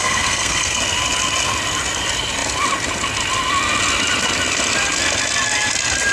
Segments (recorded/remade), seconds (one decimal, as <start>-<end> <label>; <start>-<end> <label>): 0.0-0.8 remade; 0.8-6.1 recorded